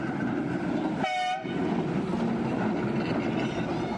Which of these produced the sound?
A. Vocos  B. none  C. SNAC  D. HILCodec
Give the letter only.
B